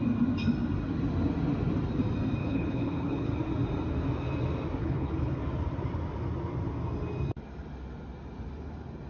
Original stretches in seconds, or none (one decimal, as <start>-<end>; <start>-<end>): 0.0-2.4; 3.3-4.8; 5.4-9.1